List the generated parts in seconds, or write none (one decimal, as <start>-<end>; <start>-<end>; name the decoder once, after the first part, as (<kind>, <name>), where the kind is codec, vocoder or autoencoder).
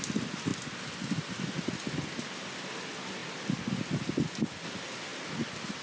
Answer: none